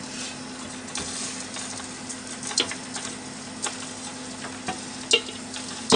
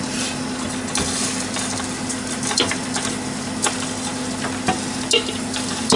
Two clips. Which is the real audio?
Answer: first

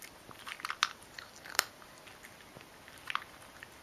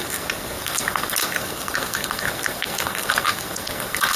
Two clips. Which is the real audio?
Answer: first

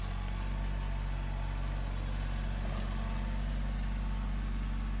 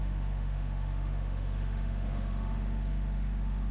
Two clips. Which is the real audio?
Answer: first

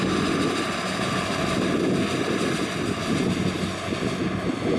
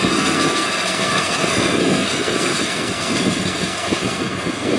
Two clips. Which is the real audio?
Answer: first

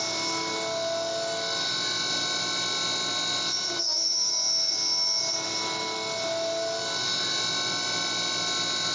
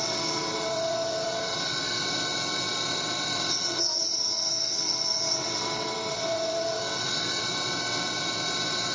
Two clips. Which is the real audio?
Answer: first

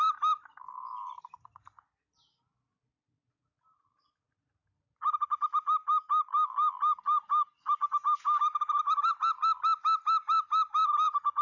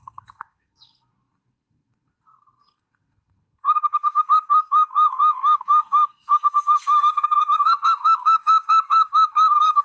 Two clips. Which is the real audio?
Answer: first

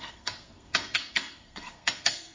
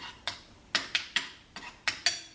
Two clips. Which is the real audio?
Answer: second